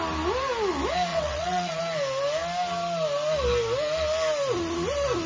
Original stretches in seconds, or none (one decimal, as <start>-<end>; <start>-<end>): 0.0-1.1; 1.8-5.3